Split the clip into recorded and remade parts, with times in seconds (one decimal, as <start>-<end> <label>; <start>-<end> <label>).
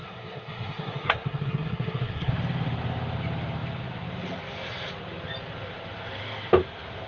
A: 0.0-2.3 remade; 2.3-7.1 recorded